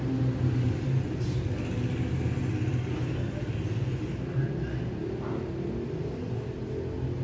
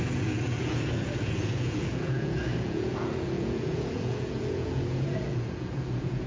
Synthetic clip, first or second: second